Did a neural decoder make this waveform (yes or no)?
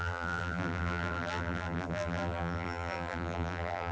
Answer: yes